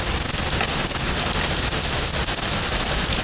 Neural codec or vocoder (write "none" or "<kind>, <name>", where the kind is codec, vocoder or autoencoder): none